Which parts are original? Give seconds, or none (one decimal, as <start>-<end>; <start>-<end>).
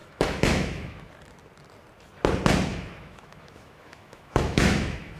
1.1-2.7